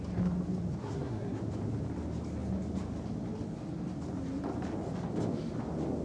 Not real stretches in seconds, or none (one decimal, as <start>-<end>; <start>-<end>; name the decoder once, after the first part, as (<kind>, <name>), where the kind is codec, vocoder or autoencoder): 0.8-1.4 (codec, SNAC)